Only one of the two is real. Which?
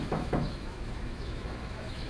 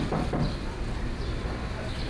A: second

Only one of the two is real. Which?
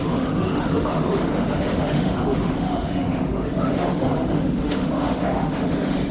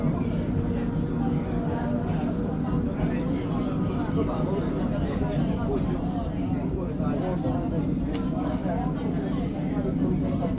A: second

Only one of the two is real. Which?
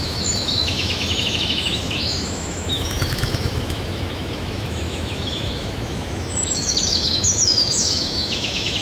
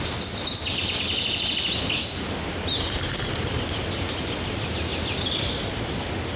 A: second